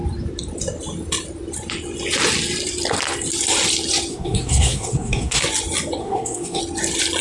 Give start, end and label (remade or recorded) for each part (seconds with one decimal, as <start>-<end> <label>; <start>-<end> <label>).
0.0-4.1 recorded; 4.1-5.4 remade; 5.4-6.0 recorded; 6.0-6.6 remade; 6.6-7.2 recorded